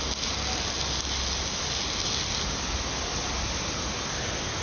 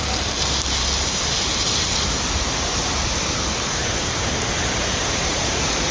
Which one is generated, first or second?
second